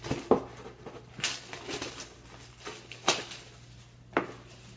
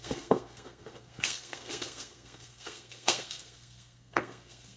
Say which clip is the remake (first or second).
second